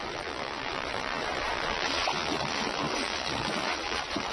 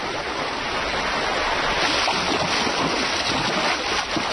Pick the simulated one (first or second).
first